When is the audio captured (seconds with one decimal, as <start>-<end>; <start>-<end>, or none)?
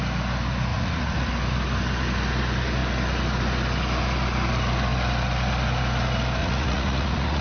0.0-0.7; 1.3-6.4